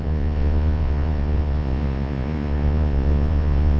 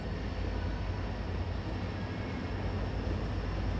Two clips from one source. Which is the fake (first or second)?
first